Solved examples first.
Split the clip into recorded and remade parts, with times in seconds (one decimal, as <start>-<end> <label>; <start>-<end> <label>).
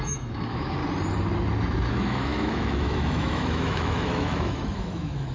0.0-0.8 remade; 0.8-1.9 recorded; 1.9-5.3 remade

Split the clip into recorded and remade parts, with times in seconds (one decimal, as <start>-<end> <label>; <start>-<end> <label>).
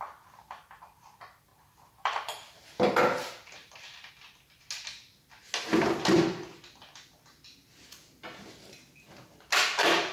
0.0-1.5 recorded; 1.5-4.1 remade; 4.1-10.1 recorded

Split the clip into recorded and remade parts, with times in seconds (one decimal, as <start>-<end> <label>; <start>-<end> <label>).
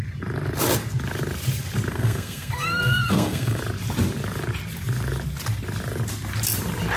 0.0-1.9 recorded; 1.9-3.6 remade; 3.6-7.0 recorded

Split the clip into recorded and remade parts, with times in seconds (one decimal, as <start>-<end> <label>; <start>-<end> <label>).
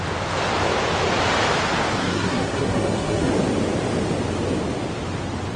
0.0-2.0 recorded; 2.0-3.3 remade; 3.3-5.6 recorded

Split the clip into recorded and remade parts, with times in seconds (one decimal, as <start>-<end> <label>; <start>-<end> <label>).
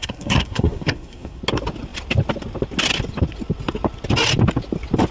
0.0-1.4 remade; 1.4-5.1 recorded